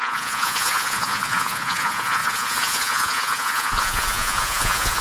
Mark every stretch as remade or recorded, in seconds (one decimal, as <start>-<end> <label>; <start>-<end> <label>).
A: 0.0-5.0 remade